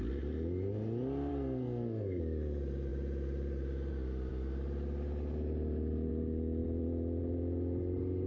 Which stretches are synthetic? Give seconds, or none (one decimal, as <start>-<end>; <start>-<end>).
1.3-2.2